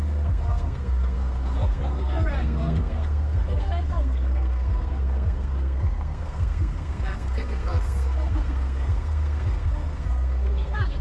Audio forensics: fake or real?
fake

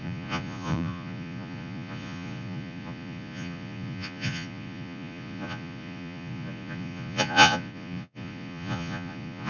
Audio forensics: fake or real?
fake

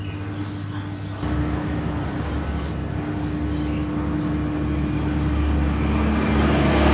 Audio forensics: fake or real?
real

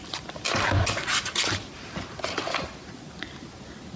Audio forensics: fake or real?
real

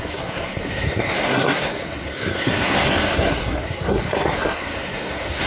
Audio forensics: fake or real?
fake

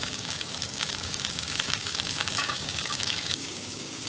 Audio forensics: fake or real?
fake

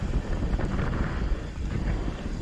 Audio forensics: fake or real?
real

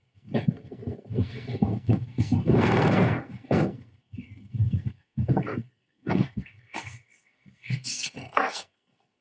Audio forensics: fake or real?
fake